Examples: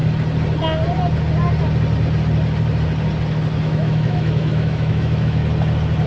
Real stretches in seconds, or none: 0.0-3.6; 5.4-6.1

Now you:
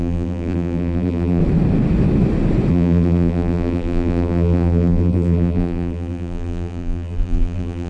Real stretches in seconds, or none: 1.4-2.7